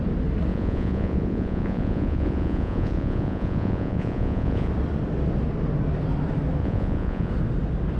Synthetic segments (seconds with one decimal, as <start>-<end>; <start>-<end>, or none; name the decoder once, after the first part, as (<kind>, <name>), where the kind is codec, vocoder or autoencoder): 0.5-4.7 (vocoder, Vocos); 6.6-7.3